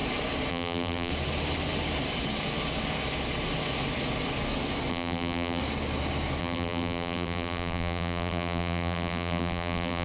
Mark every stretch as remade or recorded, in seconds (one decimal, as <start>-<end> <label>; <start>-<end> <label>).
0.0-0.5 recorded; 0.5-1.1 remade; 1.1-4.9 recorded; 4.9-5.6 remade; 5.6-6.4 recorded; 6.4-10.0 remade